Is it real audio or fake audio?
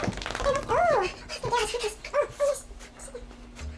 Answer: real